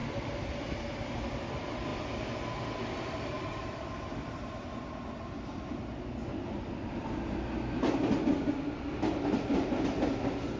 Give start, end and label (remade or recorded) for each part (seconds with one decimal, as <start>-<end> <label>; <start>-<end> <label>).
0.0-10.6 recorded